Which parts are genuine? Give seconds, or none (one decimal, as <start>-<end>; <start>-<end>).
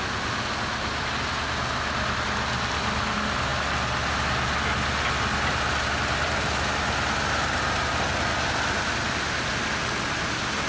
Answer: 0.0-10.7